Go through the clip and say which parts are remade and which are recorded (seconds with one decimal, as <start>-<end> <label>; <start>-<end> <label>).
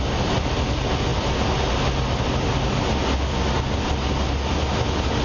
0.0-5.2 recorded